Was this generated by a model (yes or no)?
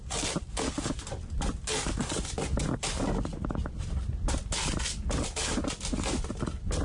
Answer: no